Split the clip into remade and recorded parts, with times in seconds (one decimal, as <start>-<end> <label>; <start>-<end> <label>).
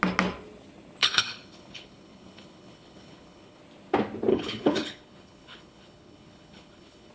0.0-1.0 recorded; 1.0-3.6 remade; 3.6-4.3 recorded; 4.3-7.1 remade